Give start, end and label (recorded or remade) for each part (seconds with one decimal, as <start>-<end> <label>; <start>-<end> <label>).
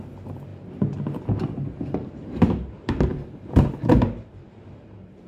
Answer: 0.0-0.5 remade; 0.5-1.8 recorded; 1.8-5.3 remade